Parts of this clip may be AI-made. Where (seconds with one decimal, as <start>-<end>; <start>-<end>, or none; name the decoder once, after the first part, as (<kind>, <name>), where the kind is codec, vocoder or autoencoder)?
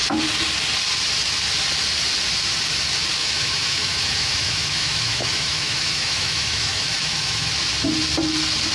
3.2-7.5 (autoencoder, DAC-VAE)